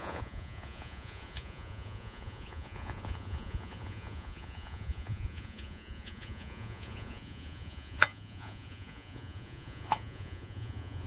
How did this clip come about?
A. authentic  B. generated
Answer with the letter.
B